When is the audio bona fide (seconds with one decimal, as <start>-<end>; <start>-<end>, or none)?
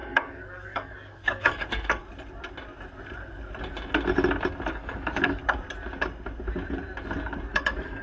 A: 2.0-4.7; 5.4-7.5